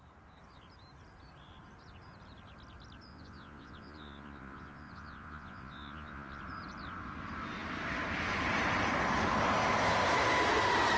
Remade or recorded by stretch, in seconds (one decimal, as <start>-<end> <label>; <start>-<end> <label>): 0.0-3.1 recorded; 3.1-6.4 remade; 6.4-11.0 recorded